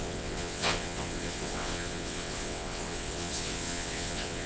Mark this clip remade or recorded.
remade